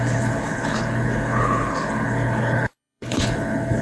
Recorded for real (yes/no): no